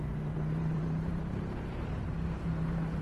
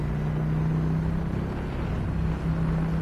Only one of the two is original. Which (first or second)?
second